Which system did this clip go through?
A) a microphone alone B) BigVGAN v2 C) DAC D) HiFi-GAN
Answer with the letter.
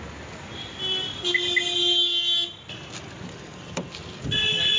A